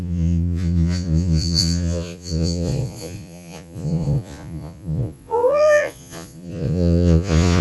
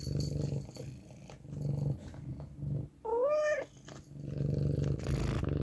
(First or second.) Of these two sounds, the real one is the second